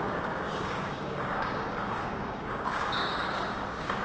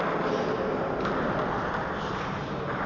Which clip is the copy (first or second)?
first